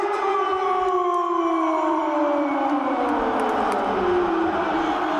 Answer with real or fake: real